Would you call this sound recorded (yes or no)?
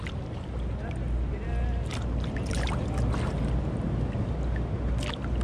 yes